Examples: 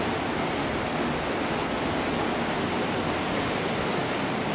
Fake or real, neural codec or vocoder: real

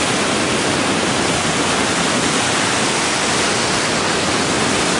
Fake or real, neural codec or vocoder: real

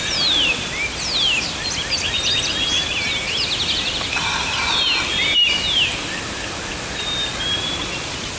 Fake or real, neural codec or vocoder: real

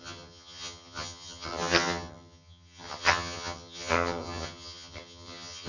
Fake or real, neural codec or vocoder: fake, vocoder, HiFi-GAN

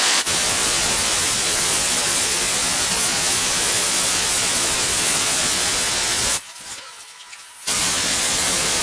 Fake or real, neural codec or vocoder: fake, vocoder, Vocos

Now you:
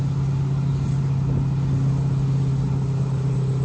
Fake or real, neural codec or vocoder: real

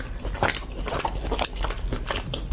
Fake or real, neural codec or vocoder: real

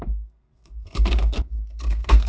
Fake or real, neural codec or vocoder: fake, codec, SNAC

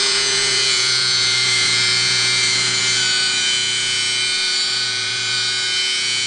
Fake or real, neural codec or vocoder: fake, vocoder, Vocos